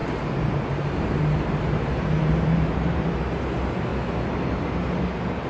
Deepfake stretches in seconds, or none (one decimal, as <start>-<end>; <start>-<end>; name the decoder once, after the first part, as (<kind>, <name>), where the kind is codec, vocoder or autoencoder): 0.0-3.3 (vocoder, BigVGAN v2)